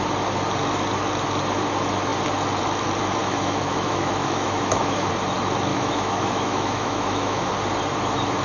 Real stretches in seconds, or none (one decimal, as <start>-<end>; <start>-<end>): 0.0-3.2; 5.1-5.7; 7.5-8.4